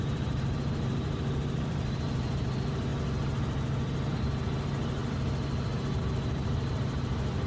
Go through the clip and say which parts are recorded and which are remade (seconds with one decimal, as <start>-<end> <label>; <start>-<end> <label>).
0.0-2.9 remade; 2.9-4.1 recorded; 4.1-5.0 remade; 5.0-5.8 recorded; 5.8-7.5 remade